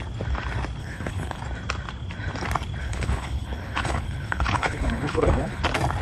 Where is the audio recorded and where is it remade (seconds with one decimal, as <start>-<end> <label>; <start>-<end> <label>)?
0.0-0.8 recorded; 0.8-1.4 remade; 1.4-2.8 recorded; 2.8-5.6 remade; 5.6-6.0 recorded